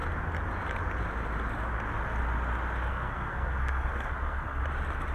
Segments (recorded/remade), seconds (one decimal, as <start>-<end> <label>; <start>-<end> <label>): 0.0-2.9 recorded; 2.9-4.6 remade; 4.6-5.1 recorded